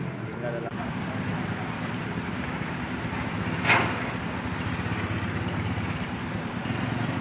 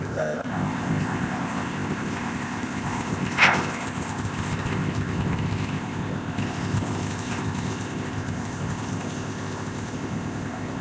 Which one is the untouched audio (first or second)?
first